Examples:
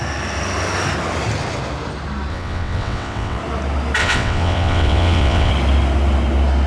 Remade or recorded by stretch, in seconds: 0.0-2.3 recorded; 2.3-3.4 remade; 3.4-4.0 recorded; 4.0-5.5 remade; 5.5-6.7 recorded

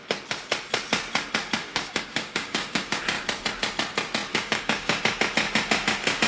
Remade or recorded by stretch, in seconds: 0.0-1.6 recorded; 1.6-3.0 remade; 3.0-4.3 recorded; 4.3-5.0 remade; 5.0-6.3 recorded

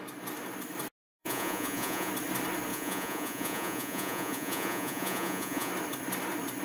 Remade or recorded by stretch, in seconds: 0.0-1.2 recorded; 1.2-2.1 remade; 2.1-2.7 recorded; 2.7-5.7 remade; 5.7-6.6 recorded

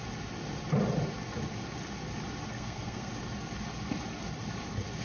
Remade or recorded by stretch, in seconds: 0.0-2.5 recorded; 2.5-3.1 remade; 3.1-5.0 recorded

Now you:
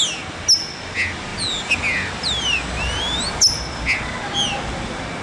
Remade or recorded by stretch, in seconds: 0.0-5.2 recorded

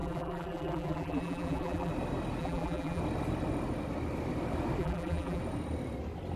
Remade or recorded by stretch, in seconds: 0.0-1.9 remade; 1.9-2.4 recorded; 2.4-3.0 remade; 3.0-4.8 recorded; 4.8-5.4 remade; 5.4-6.4 recorded